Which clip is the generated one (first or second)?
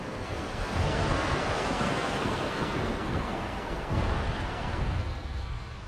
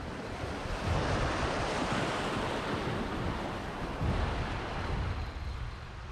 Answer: first